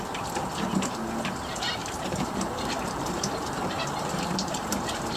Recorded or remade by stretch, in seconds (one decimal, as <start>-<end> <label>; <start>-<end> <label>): 0.0-1.8 recorded; 1.8-5.2 remade